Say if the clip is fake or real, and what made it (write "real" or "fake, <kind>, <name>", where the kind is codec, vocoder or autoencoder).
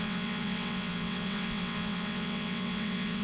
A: fake, vocoder, WaveNeXt